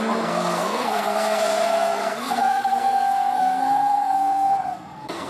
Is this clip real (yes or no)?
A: no